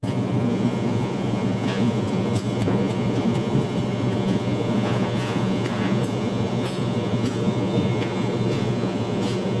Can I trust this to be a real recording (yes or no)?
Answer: no